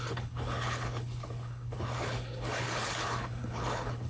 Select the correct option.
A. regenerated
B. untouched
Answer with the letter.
A